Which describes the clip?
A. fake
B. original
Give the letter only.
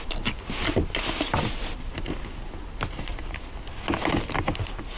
B